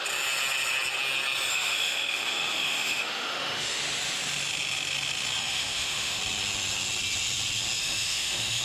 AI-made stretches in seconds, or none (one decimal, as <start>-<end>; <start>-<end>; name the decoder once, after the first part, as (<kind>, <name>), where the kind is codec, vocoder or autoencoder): 1.5-3.8 (autoencoder, DAC-VAE); 5.4-6.2; 7.8-8.6